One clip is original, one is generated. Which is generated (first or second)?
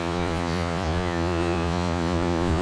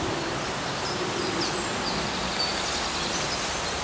first